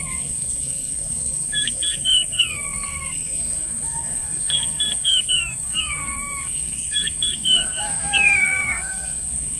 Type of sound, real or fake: fake